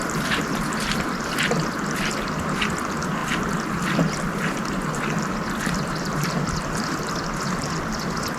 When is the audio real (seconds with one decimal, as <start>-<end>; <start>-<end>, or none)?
0.0-3.2; 6.1-8.4